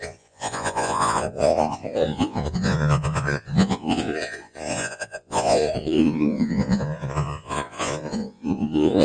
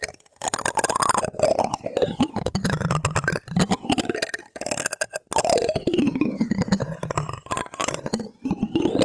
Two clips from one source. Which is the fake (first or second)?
first